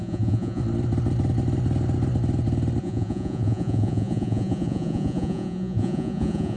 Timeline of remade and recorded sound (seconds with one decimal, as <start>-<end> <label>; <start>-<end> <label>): 0.0-0.6 remade; 0.6-2.8 recorded; 2.8-6.6 remade

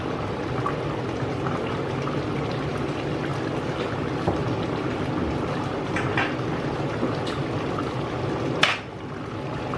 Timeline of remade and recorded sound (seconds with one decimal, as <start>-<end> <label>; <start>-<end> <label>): 0.0-9.8 recorded

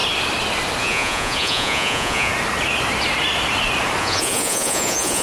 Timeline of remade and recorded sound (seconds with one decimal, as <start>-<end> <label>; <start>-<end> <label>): 0.0-0.8 recorded; 0.8-2.3 remade; 2.3-4.0 recorded; 4.0-5.2 remade

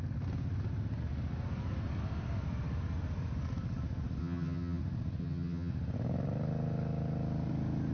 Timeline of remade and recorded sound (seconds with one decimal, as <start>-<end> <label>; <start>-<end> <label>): 0.0-4.2 recorded; 4.2-4.8 remade; 4.8-5.2 recorded; 5.2-5.7 remade; 5.7-7.9 recorded

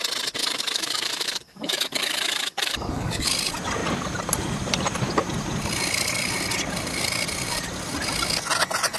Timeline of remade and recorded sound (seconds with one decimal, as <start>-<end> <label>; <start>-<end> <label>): 0.0-0.4 recorded; 0.4-3.3 remade; 3.3-9.0 recorded

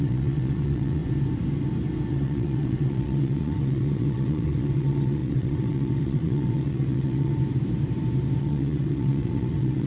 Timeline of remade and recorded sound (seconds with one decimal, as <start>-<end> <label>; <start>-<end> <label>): 0.0-1.0 remade; 1.0-2.1 recorded; 2.1-7.3 remade; 7.3-8.4 recorded; 8.4-9.9 remade